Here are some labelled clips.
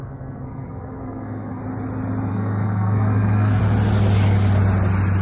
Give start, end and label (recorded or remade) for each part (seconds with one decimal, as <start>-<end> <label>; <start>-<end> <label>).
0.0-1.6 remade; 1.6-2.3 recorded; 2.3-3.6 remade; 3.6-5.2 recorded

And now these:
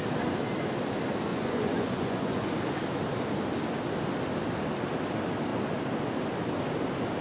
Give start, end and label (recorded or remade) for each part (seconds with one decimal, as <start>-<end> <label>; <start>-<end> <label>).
0.0-1.3 recorded; 1.3-2.5 remade; 2.5-7.2 recorded

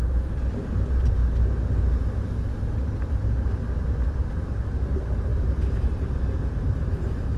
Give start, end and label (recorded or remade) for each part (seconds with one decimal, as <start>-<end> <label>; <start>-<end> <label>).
0.0-1.2 remade; 1.2-4.3 recorded; 4.3-7.4 remade

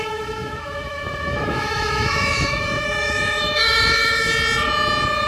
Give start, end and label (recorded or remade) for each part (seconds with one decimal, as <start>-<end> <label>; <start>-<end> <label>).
0.0-4.3 remade; 4.3-5.3 recorded

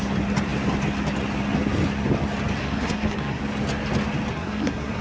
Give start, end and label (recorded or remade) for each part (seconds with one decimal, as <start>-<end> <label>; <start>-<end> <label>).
0.0-2.6 recorded; 2.6-3.4 remade; 3.4-4.3 recorded; 4.3-5.0 remade